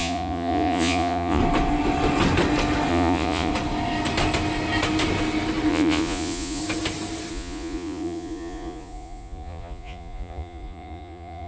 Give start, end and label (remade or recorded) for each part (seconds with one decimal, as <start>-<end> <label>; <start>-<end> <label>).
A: 0.0-1.4 remade; 1.4-2.9 recorded; 2.9-3.5 remade; 3.5-5.7 recorded; 5.7-6.6 remade; 6.6-7.3 recorded; 7.3-11.5 remade